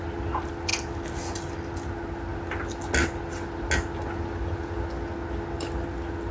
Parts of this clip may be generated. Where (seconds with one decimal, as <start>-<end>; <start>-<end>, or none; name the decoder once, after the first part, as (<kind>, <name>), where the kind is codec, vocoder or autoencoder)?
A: none